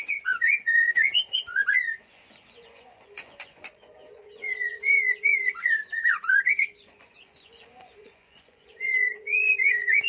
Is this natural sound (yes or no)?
no